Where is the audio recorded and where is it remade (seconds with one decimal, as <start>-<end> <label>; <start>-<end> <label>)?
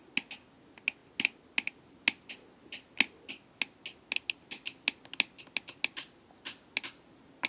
0.0-7.5 recorded